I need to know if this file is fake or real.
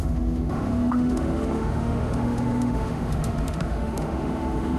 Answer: fake